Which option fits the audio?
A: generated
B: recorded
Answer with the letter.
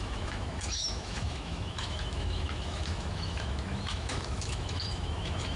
A